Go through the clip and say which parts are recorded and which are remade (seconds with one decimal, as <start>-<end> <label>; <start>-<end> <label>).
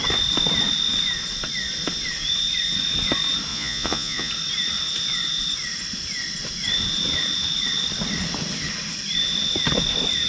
0.0-3.5 recorded; 3.5-4.3 remade; 4.3-10.3 recorded